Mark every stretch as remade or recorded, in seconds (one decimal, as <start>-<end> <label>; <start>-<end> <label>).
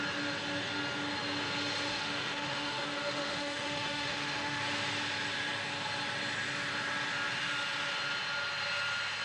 0.0-1.9 recorded; 1.9-4.6 remade; 4.6-9.2 recorded